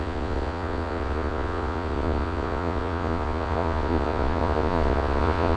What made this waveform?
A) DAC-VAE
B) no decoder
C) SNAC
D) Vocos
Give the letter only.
D